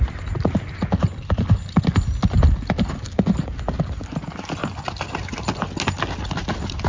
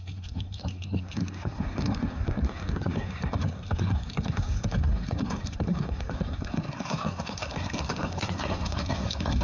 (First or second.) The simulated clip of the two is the second